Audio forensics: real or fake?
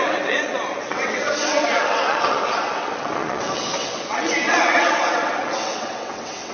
fake